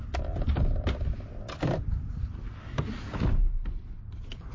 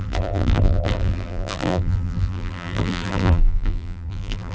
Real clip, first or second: first